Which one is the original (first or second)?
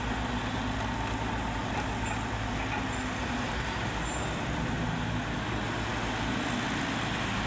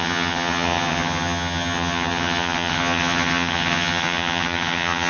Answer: first